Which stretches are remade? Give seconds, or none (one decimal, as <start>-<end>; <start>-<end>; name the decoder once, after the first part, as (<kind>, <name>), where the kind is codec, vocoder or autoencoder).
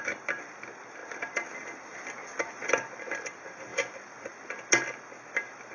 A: 0.0-1.0 (vocoder, BigVGAN v2); 2.5-3.7; 5.1-5.7